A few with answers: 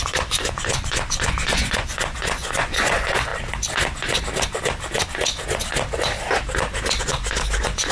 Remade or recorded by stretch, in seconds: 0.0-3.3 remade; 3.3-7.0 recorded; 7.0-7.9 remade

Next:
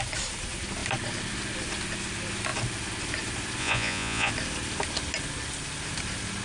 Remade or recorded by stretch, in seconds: 0.0-3.6 recorded; 3.6-4.3 remade; 4.3-6.4 recorded

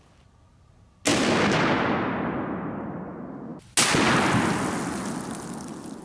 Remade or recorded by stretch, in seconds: 0.0-6.0 recorded

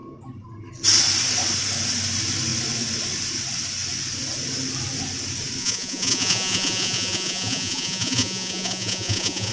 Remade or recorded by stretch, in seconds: 0.0-5.6 recorded; 5.6-9.5 remade

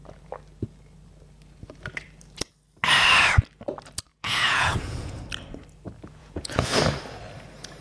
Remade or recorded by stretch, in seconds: 0.0-4.1 recorded; 4.1-5.2 remade; 5.2-6.2 recorded; 6.2-6.8 remade; 6.8-7.8 recorded